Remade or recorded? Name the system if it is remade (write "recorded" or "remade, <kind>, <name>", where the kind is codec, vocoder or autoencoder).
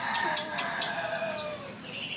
recorded